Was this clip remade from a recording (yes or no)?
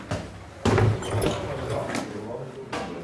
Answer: no